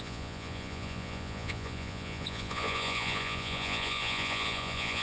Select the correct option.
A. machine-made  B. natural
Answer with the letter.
A